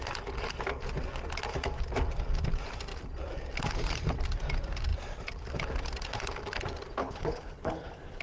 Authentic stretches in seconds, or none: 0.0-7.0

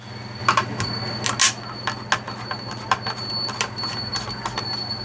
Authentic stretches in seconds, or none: 0.0-5.0